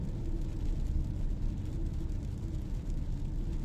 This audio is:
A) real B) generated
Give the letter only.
A